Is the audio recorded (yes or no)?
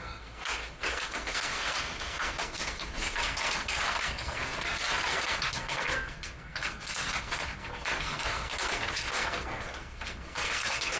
no